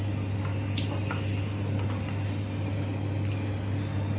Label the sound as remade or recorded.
recorded